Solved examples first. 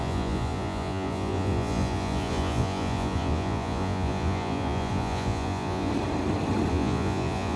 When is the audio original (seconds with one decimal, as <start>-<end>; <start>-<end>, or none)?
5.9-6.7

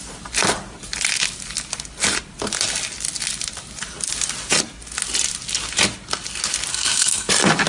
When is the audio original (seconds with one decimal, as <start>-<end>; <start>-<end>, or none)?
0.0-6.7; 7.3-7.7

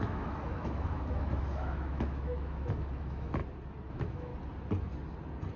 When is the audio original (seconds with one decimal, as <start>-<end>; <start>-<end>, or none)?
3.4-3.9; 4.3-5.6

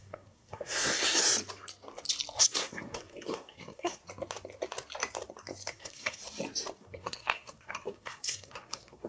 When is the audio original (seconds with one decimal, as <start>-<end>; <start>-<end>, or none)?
0.9-2.4; 4.0-5.7; 6.2-6.8

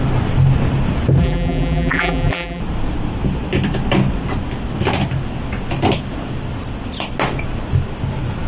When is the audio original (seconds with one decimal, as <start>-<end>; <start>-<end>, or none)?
0.0-1.2; 2.6-8.5

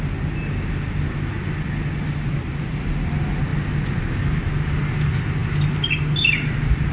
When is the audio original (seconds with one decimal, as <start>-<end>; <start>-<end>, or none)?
0.0-6.9

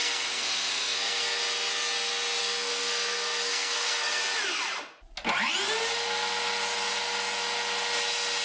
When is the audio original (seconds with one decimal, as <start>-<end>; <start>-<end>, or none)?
1.4-2.4; 4.2-8.4